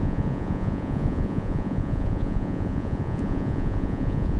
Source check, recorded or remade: remade